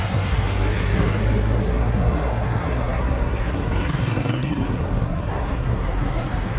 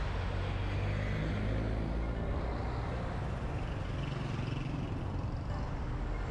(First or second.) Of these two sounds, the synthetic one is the first